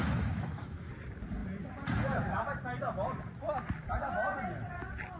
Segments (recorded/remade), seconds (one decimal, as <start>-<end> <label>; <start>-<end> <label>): 0.0-0.9 remade; 0.9-5.2 recorded